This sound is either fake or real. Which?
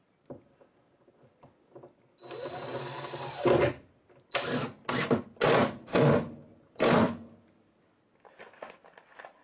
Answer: real